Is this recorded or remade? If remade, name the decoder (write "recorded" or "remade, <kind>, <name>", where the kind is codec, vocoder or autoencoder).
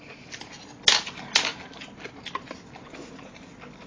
recorded